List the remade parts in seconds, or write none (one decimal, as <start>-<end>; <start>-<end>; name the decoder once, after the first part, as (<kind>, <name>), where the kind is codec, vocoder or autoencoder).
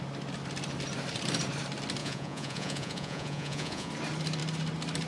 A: 2.0-3.9 (vocoder, Vocos)